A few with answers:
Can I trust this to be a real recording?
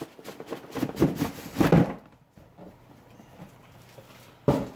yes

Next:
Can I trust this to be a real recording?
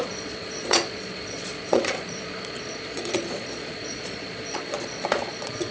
no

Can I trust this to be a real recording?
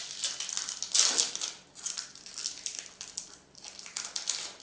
yes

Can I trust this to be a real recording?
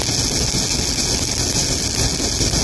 yes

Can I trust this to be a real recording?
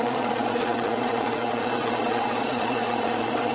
no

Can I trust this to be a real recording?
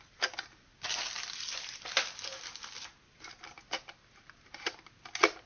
yes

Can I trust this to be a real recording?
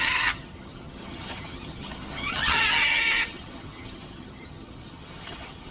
no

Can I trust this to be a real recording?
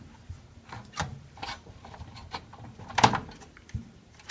no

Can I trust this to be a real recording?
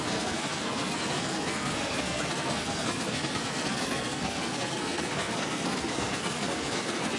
no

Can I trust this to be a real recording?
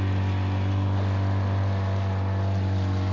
yes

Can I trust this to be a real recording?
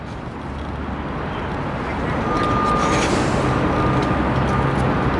yes